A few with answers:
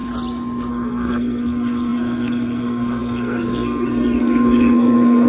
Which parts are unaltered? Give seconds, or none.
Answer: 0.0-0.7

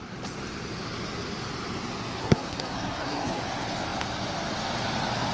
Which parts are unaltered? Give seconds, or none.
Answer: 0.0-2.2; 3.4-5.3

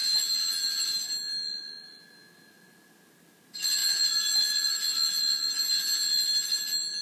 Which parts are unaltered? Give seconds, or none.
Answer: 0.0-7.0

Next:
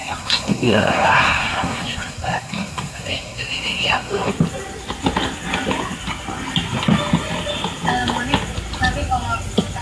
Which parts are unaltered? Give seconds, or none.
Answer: 4.3-9.8

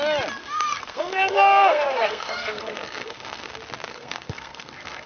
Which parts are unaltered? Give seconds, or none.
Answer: 0.0-0.4; 3.5-3.9

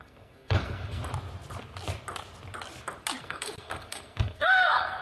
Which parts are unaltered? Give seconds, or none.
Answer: 1.0-3.2

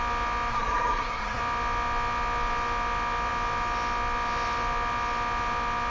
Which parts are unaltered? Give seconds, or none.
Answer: 0.0-0.5; 1.4-5.9